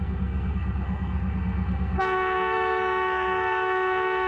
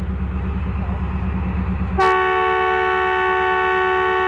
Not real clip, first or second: first